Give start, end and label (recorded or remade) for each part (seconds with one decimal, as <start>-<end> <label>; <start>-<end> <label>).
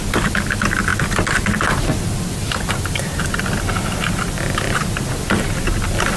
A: 0.0-6.2 recorded